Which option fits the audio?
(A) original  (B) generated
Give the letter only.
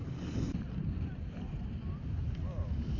A